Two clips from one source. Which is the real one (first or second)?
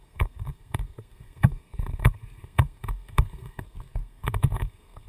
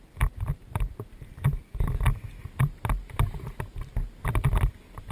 second